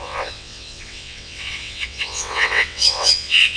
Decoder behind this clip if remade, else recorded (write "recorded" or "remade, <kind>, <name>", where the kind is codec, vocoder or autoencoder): remade, vocoder, WaveNeXt